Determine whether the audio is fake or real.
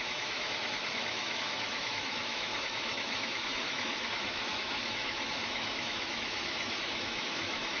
fake